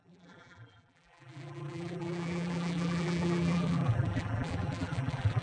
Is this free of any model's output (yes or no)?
no